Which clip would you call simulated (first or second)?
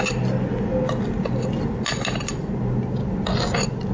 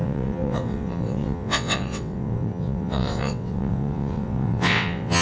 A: second